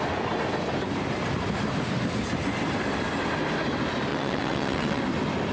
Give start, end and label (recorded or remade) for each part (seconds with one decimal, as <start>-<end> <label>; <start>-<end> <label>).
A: 0.0-4.1 recorded; 4.1-5.0 remade; 5.0-5.5 recorded

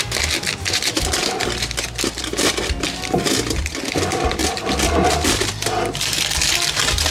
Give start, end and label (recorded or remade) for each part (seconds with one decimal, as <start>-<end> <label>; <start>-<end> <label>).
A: 0.0-4.4 recorded; 4.4-5.5 remade; 5.5-7.1 recorded

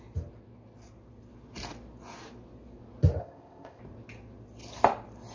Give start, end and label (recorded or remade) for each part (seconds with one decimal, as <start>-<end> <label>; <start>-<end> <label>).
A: 0.0-3.2 recorded; 3.2-3.8 remade; 3.8-5.3 recorded